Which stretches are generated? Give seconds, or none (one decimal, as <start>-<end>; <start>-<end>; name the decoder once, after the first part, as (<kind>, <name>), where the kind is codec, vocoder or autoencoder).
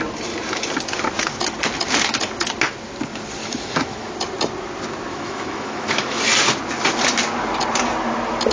3.4-4.1 (autoencoder, DAC-VAE); 5.1-6.2